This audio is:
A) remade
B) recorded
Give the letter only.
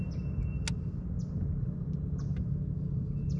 B